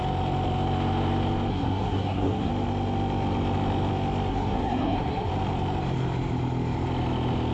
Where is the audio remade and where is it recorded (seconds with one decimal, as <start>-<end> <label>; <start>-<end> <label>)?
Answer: 0.0-1.5 recorded; 1.5-2.5 remade; 2.5-4.3 recorded; 4.3-5.3 remade; 5.3-7.5 recorded